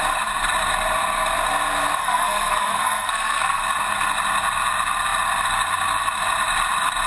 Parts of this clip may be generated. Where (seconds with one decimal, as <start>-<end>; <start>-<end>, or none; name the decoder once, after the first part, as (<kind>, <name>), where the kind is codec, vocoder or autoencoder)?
2.0-3.6 (codec, SNAC)